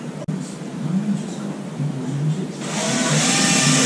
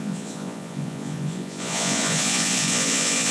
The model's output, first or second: second